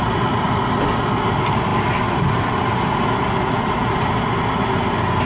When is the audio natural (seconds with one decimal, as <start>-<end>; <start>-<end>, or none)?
0.0-5.3